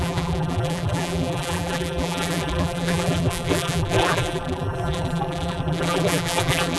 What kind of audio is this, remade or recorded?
remade